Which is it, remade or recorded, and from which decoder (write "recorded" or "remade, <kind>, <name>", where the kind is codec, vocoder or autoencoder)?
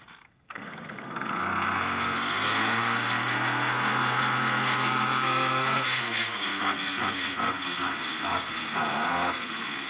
remade, codec, SNAC